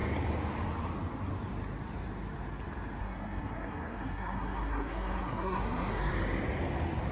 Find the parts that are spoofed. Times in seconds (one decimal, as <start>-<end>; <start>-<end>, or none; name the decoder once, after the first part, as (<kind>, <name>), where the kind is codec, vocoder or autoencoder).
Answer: 3.0-6.1 (codec, SNAC)